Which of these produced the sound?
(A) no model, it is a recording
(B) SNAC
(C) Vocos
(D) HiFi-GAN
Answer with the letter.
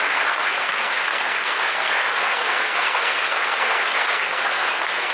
B